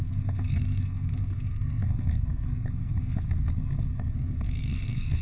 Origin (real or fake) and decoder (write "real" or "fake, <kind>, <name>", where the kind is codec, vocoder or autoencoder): fake, codec, SNAC